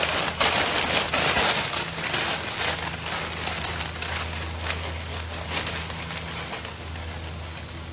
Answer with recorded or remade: recorded